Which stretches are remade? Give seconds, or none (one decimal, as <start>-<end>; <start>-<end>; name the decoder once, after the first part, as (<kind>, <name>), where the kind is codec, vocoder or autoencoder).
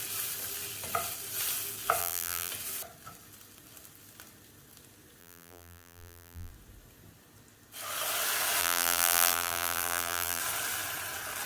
2.0-2.5 (vocoder, BigVGAN v2); 5.2-6.5; 8.6-10.4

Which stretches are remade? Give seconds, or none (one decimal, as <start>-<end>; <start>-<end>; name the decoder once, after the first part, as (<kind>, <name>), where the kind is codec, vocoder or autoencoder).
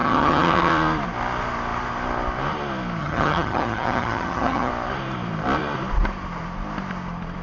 0.0-0.7 (vocoder, HiFi-GAN); 3.0-4.7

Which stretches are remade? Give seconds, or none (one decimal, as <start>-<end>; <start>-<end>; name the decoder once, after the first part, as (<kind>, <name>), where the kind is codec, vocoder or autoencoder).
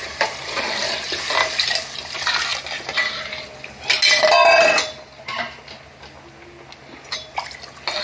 none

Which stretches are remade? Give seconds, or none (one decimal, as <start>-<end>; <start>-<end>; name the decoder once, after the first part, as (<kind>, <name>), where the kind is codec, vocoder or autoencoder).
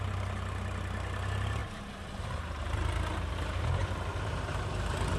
none